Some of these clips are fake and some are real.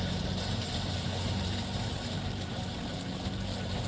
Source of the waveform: fake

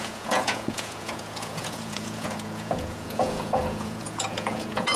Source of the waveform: fake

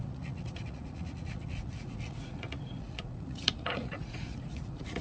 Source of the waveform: fake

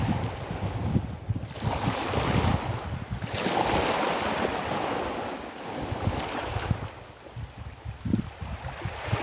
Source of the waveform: real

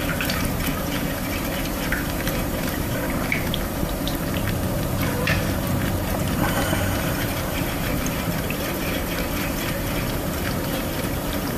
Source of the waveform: fake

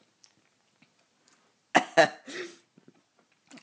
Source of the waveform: real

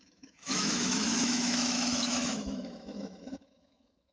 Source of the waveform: fake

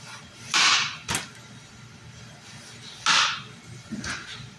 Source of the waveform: real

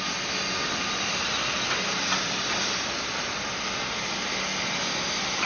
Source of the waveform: real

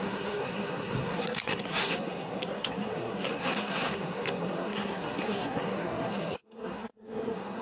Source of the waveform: fake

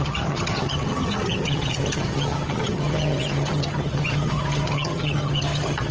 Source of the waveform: fake